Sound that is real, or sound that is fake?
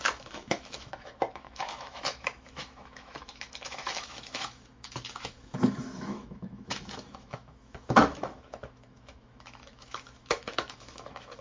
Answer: fake